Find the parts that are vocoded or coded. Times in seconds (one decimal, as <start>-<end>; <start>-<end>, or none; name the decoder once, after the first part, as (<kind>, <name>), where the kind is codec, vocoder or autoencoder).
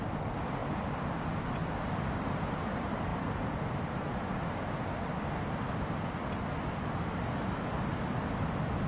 none